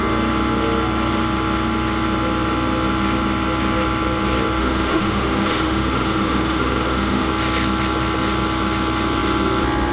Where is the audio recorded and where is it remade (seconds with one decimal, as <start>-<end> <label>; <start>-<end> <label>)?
0.0-4.6 recorded; 4.6-7.3 remade; 7.3-9.9 recorded